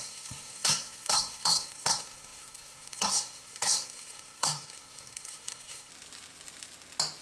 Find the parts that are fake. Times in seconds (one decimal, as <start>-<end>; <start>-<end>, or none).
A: 0.0-5.9